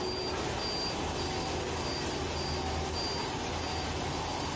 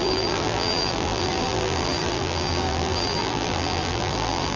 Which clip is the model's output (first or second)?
second